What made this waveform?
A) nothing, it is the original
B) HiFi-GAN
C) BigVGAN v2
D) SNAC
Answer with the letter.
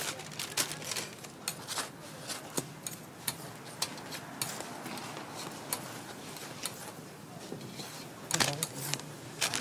A